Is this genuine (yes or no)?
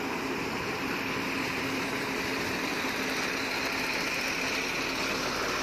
yes